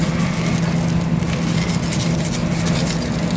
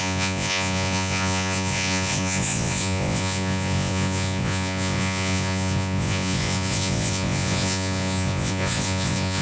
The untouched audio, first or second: first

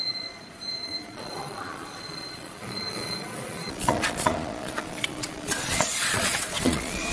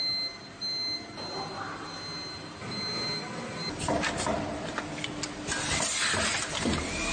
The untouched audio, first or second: second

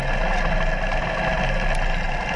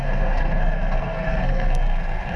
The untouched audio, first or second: first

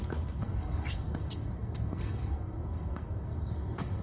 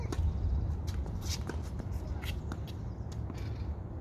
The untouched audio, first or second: second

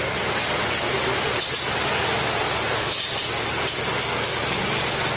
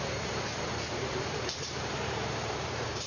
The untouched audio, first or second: first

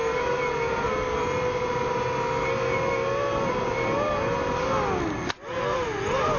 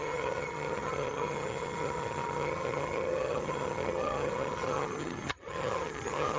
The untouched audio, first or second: first